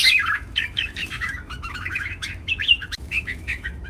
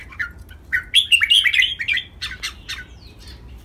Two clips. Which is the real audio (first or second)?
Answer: second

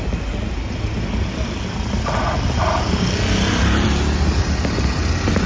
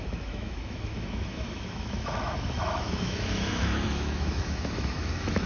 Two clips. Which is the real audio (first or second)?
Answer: first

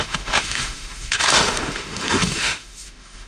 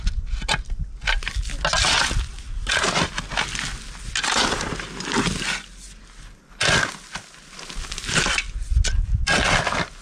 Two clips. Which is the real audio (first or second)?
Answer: second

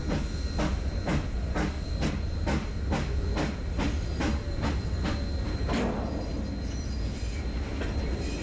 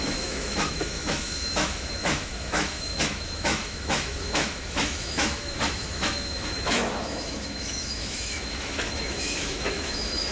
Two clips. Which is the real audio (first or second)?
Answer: first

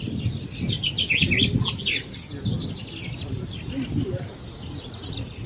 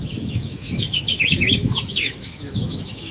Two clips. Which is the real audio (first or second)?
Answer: first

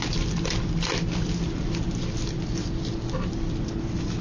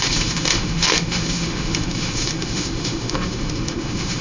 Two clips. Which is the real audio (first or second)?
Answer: first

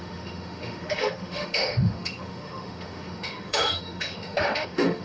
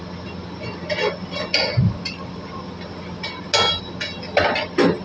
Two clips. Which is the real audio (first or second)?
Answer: second